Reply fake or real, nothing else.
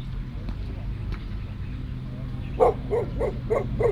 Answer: real